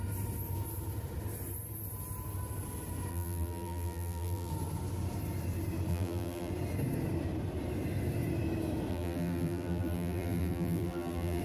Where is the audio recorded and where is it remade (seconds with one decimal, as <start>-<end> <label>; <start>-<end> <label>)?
0.0-3.1 recorded; 3.1-4.5 remade; 4.5-5.9 recorded; 5.9-6.5 remade; 6.5-8.9 recorded; 8.9-11.4 remade